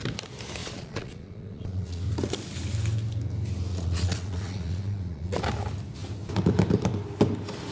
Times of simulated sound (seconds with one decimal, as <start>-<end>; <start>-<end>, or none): 0.6-2.0; 3.7-5.4